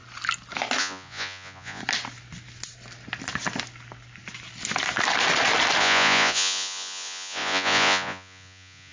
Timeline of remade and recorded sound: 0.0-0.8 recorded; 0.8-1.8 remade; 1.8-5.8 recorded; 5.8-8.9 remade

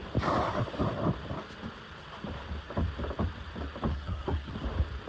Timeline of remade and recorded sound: 0.0-3.9 recorded; 3.9-4.5 remade; 4.5-5.1 recorded

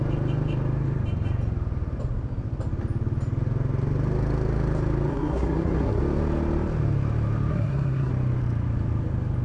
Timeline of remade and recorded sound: 0.0-5.1 recorded; 5.1-6.0 remade; 6.0-7.5 recorded; 7.5-8.1 remade; 8.1-9.4 recorded